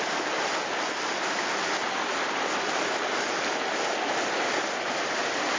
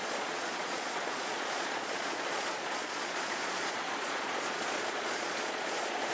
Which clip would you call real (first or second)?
first